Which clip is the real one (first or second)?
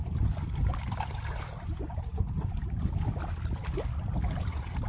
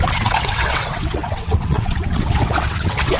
first